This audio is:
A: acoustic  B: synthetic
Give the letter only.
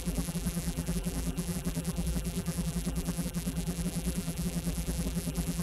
B